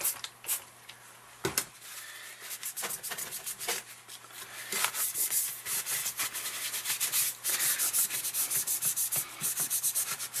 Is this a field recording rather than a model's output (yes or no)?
yes